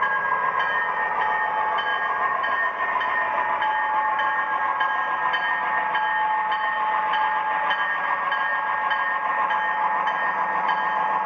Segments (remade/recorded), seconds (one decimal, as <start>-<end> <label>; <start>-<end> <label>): 0.0-11.3 recorded